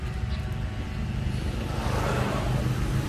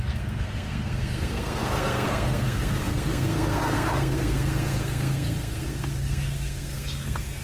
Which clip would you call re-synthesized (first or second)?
second